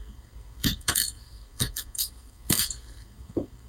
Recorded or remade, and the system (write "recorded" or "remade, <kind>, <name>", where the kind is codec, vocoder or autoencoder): remade, codec, SNAC